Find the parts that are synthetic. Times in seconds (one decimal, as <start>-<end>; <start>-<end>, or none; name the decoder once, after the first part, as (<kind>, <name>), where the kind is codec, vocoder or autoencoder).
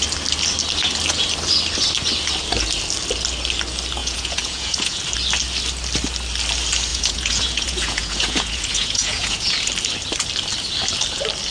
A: 4.0-5.0 (vocoder, Vocos); 6.9-9.7